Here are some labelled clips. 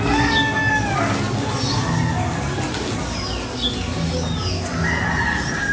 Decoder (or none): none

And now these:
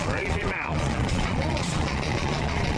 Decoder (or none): vocoder, Vocos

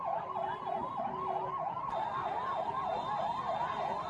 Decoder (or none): none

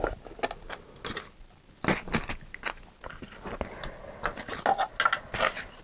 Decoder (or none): none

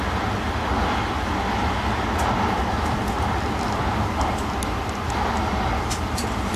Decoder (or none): none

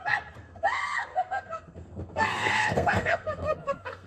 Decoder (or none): codec, SNAC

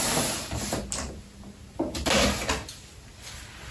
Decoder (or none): none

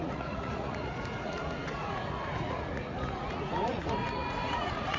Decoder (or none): vocoder, Vocos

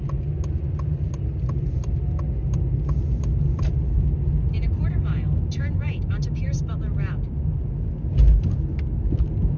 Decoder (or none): none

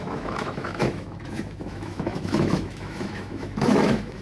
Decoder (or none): autoencoder, DAC-VAE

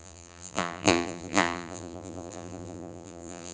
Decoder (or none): vocoder, BigVGAN v2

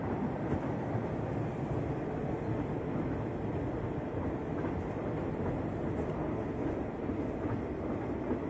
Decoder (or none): none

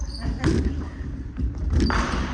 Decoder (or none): vocoder, BigVGAN v2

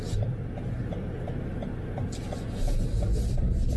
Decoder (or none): none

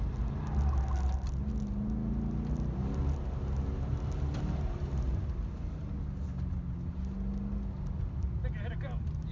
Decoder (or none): none